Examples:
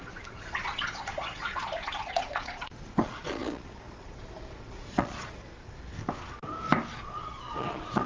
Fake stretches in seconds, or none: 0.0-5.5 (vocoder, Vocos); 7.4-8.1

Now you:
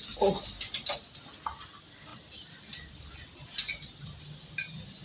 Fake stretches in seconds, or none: none

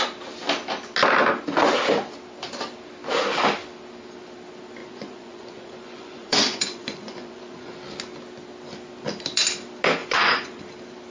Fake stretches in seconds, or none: 4.8-7.8 (vocoder, Vocos); 10.0-10.6

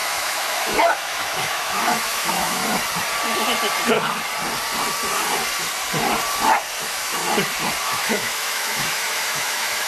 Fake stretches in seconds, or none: 0.0-2.6 (autoencoder, DAC-VAE); 6.8-7.2; 7.8-9.9

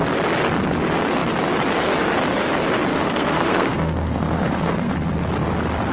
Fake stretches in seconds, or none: 2.9-4.9 (codec, SNAC)

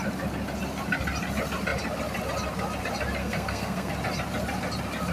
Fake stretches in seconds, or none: 3.2-3.9 (codec, SNAC)

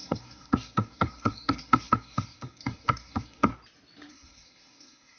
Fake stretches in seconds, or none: 0.0-3.5 (codec, SNAC); 4.1-5.2